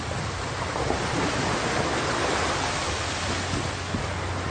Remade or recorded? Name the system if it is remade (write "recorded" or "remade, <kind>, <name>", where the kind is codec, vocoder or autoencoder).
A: recorded